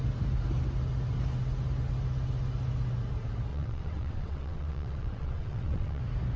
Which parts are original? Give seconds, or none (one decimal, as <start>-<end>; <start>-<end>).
0.0-3.5; 6.0-6.4